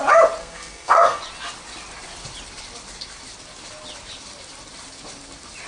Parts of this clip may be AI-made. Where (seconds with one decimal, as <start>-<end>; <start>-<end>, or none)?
0.4-1.2